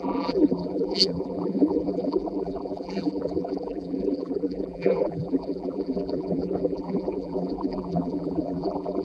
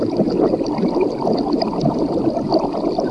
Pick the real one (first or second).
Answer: second